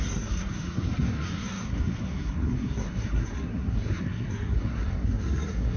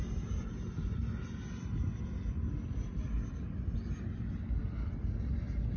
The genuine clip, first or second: second